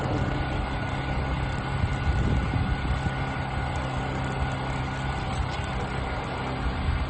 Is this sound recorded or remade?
recorded